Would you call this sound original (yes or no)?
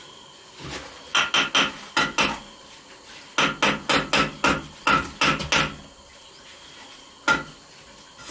yes